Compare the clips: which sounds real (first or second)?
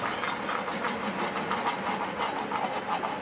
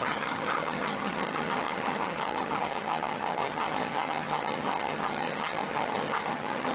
first